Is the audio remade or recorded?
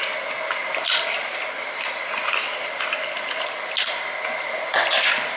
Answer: recorded